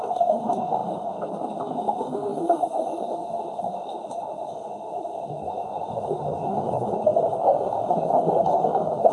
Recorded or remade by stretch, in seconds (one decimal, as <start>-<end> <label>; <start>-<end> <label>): 0.0-9.1 remade